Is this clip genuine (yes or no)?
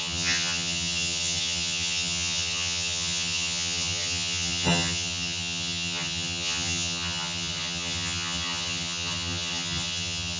no